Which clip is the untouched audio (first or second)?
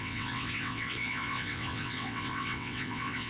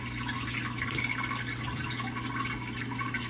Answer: second